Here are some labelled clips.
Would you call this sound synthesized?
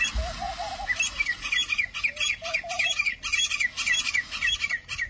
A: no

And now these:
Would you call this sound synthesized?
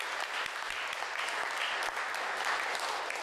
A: no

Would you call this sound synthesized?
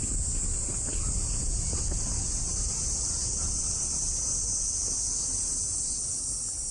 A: no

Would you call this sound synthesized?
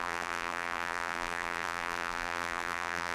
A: yes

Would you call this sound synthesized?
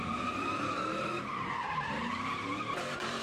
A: yes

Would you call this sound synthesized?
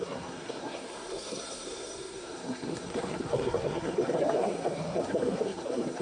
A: yes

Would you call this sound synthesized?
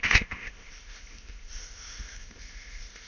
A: yes